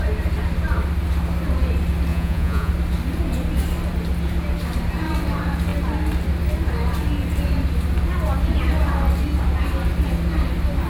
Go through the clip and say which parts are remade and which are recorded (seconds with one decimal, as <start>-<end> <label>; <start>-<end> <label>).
0.0-2.1 recorded; 2.1-2.7 remade; 2.7-10.9 recorded